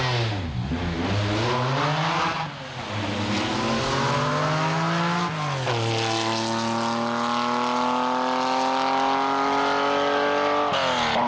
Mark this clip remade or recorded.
recorded